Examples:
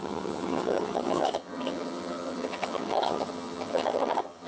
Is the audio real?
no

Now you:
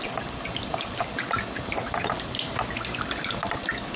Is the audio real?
yes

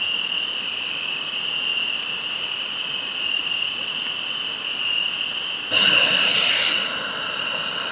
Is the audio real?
yes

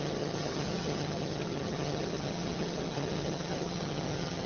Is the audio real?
no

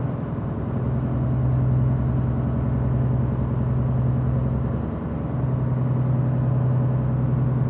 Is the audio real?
yes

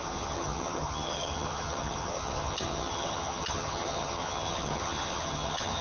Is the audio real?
no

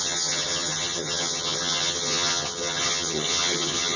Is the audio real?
no